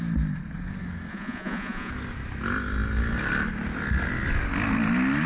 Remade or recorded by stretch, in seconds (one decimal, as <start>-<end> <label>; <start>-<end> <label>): 0.0-1.1 recorded; 1.1-1.9 remade; 1.9-5.3 recorded